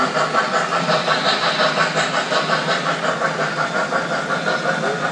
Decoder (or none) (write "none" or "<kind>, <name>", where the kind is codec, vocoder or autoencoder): none